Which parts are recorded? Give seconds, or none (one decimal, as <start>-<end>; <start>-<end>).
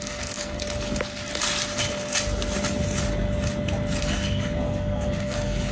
0.6-4.0